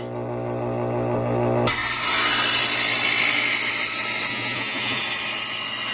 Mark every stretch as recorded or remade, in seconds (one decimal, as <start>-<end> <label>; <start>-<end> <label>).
0.0-4.3 recorded; 4.3-5.0 remade; 5.0-5.9 recorded